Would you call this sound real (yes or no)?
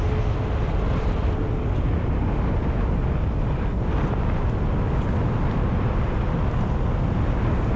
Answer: yes